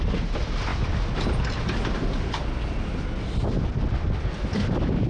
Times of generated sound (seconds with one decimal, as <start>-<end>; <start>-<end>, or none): none